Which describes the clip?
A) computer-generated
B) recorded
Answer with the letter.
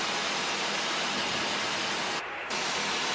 B